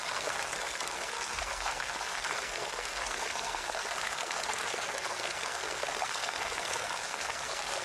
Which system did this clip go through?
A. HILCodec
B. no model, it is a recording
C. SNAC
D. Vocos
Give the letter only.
C